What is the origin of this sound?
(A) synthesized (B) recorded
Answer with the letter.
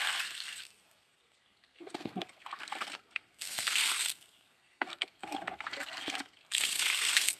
A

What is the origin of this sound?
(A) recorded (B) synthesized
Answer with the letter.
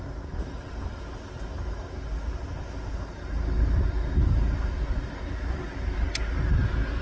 A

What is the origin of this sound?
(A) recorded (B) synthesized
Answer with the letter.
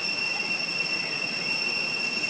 A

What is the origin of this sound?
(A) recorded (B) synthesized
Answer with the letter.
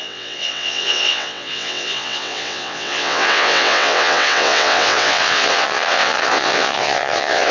B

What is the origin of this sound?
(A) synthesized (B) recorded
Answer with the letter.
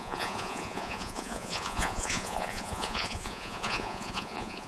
A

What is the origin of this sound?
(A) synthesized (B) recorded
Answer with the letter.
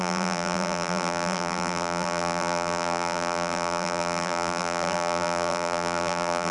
A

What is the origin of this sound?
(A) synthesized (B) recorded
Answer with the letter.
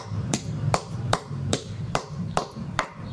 A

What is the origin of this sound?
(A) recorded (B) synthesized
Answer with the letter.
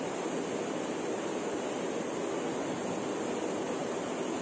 A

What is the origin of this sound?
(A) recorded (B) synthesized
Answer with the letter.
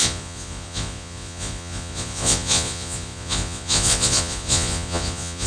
B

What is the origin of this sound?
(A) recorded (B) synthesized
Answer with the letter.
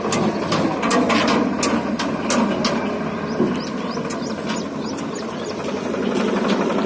A